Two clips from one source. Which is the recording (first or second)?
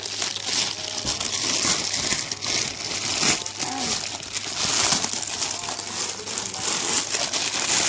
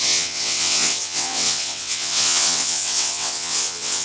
first